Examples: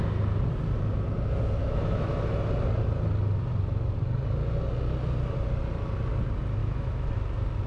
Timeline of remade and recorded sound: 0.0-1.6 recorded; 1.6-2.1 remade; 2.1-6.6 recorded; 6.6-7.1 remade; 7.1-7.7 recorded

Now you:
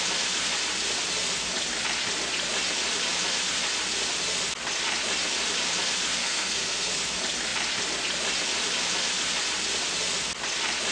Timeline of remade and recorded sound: 0.0-6.2 recorded; 6.2-7.0 remade; 7.0-10.9 recorded

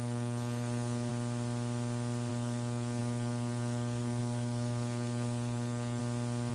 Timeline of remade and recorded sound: 0.0-1.1 remade; 1.1-2.3 recorded; 2.3-6.0 remade; 6.0-6.5 recorded

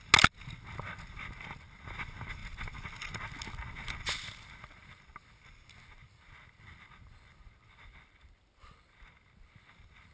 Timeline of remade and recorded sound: 0.0-10.1 recorded

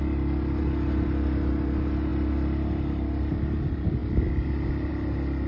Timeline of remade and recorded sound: 0.0-5.5 recorded

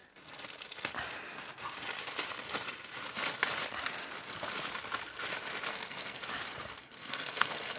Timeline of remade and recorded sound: 0.0-5.7 recorded; 5.7-6.2 remade; 6.2-6.8 recorded; 6.8-7.8 remade

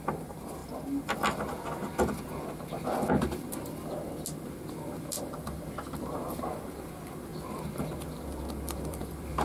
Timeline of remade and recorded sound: 0.0-0.6 remade; 0.6-4.7 recorded; 4.7-7.3 remade; 7.3-8.5 recorded; 8.5-9.4 remade

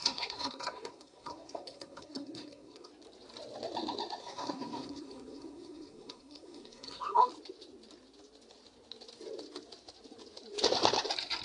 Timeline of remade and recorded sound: 0.0-2.9 remade; 2.9-4.2 recorded; 4.2-7.3 remade; 7.3-11.4 recorded